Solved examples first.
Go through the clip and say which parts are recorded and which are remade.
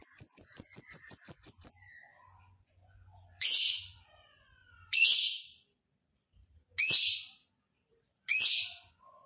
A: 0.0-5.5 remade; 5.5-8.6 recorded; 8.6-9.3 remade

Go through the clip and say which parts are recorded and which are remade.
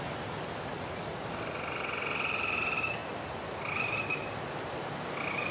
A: 0.0-5.5 recorded